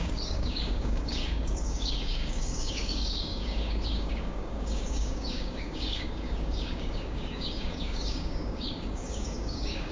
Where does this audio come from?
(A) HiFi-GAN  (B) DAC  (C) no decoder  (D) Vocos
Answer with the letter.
B